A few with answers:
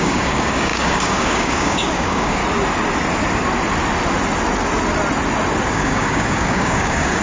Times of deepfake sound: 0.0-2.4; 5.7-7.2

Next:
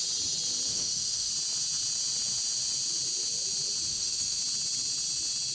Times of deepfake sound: 0.7-1.3; 3.9-4.4

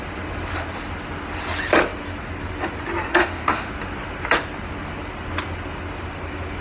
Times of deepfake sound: 3.1-3.7